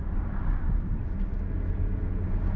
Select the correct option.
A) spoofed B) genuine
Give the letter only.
B